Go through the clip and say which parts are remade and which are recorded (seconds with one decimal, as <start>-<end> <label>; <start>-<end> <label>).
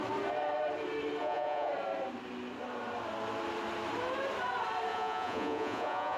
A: 0.0-1.2 recorded; 1.2-1.7 remade; 1.7-4.9 recorded; 4.9-6.2 remade